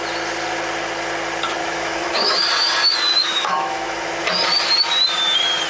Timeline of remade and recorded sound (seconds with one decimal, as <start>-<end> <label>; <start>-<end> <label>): 0.0-1.6 recorded; 1.6-2.4 remade; 2.4-3.1 recorded; 3.1-4.2 remade; 4.2-5.7 recorded